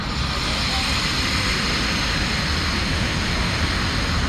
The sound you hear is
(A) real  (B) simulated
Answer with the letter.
A